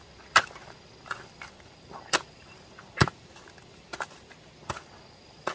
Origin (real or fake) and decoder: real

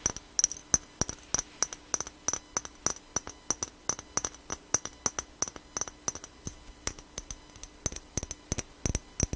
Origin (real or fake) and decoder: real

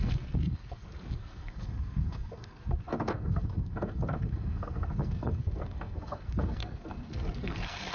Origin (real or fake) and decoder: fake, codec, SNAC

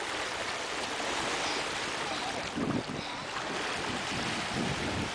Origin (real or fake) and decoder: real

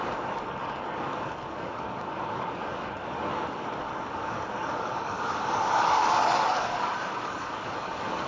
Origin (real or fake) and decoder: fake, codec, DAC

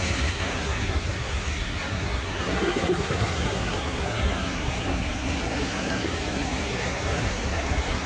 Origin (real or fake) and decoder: fake, codec, SNAC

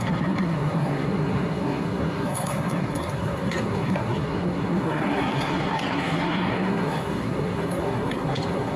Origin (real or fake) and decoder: fake, codec, SNAC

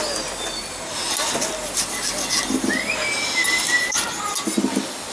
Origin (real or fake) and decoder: real